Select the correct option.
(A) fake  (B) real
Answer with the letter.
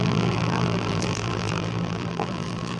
A